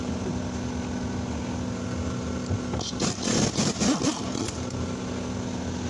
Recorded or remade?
recorded